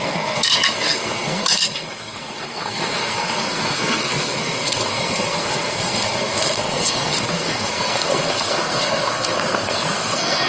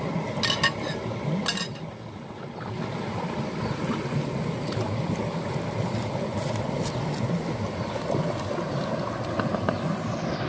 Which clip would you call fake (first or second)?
first